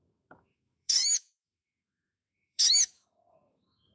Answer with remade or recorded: remade